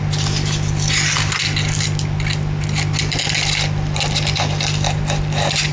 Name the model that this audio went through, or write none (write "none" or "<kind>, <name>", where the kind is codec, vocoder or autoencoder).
none